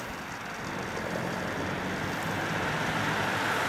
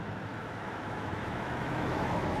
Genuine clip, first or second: first